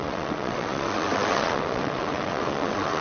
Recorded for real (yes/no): no